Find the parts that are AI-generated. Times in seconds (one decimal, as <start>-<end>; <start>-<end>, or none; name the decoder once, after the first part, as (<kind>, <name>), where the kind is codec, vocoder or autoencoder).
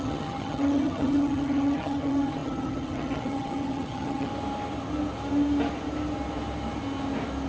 0.0-4.3 (vocoder, HiFi-GAN)